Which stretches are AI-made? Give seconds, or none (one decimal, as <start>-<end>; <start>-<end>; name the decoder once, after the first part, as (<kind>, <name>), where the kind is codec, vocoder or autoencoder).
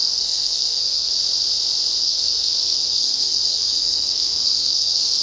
0.0-1.1 (codec, SNAC); 2.0-5.2